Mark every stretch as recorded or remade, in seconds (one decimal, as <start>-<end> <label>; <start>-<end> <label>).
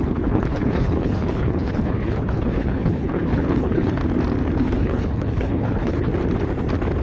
0.0-4.0 remade; 4.0-4.6 recorded; 4.6-6.1 remade; 6.1-7.0 recorded